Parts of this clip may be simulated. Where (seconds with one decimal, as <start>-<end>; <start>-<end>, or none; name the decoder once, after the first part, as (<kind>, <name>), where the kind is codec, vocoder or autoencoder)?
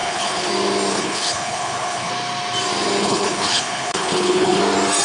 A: 0.0-0.5 (codec, HILCodec); 0.9-2.1; 3.0-4.6